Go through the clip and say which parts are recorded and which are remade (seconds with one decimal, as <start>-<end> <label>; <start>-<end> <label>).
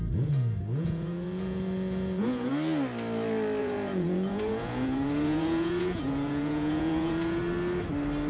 0.0-2.5 remade; 2.5-3.6 recorded; 3.6-7.4 remade; 7.4-8.3 recorded